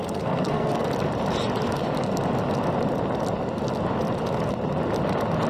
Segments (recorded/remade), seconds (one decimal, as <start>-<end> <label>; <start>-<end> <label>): 0.0-0.9 remade; 0.9-5.5 recorded